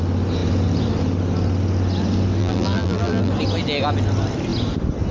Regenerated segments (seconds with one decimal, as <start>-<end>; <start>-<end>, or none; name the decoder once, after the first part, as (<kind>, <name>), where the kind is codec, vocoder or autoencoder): 2.4-3.3 (vocoder, BigVGAN v2)